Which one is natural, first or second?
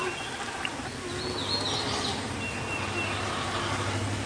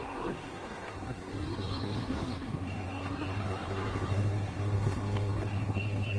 first